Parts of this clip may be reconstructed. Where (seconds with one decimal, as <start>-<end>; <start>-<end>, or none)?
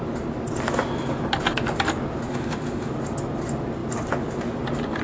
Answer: 2.3-2.9